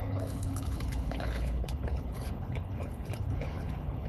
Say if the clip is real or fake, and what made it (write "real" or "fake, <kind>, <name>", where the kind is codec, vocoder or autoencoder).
fake, codec, HILCodec